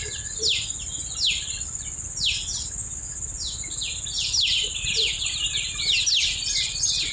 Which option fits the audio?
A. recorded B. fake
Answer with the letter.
A